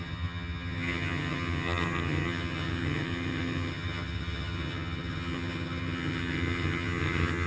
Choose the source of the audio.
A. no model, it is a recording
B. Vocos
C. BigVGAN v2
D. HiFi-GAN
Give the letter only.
D